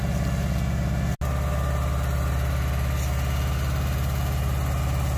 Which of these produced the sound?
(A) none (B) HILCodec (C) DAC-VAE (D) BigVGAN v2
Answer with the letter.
A